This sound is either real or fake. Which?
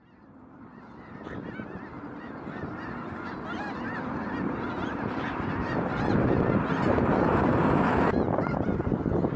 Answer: fake